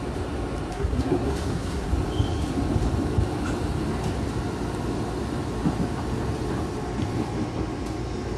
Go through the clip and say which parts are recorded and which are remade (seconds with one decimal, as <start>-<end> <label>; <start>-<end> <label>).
0.0-0.7 recorded; 0.7-1.9 remade; 1.9-8.4 recorded